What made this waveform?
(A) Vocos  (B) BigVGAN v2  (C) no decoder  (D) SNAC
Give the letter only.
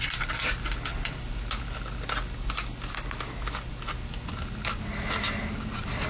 C